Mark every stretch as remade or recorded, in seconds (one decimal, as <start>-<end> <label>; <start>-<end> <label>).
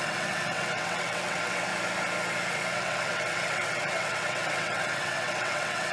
0.0-1.7 remade; 1.7-2.5 recorded; 2.5-5.9 remade